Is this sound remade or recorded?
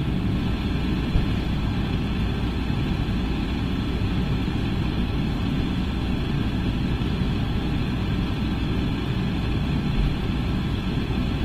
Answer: recorded